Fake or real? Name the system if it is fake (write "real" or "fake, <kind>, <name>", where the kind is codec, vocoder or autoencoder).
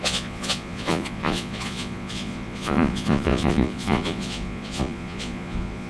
fake, vocoder, Vocos